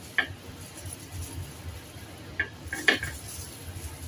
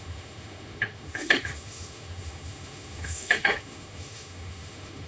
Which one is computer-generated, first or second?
second